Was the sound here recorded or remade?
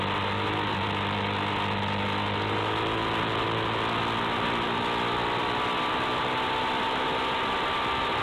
recorded